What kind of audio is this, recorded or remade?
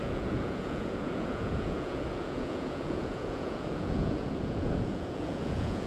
remade